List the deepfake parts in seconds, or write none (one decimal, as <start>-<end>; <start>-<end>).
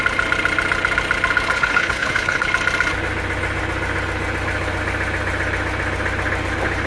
1.5-2.5